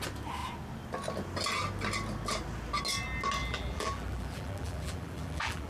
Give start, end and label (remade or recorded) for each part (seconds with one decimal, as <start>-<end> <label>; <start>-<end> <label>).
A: 0.0-3.4 recorded; 3.4-5.7 remade